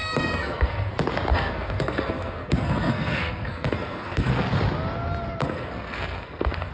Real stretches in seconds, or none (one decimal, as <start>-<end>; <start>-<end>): 0.9-1.3; 4.3-5.4